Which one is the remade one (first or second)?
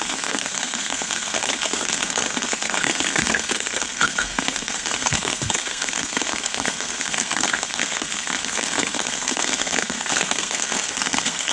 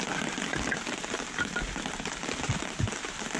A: first